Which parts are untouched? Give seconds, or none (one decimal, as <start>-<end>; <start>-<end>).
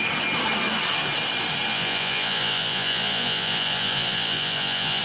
0.0-1.7